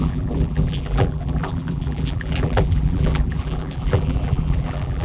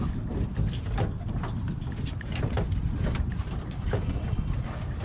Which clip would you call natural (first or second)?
second